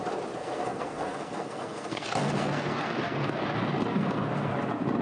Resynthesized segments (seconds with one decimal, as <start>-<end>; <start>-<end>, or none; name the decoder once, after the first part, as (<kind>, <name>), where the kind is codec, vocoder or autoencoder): 0.4-3.4 (codec, SNAC); 3.9-4.5